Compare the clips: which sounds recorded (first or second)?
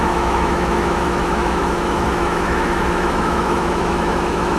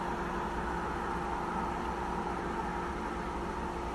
second